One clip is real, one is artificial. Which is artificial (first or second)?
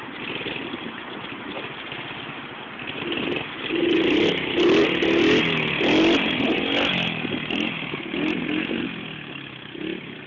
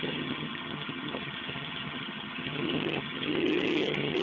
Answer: second